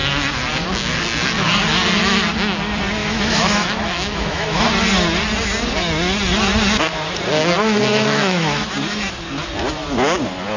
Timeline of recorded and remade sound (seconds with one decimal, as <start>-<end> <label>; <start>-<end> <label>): 0.0-3.0 recorded; 3.0-4.6 remade; 4.6-7.9 recorded; 7.9-8.7 remade; 8.7-10.6 recorded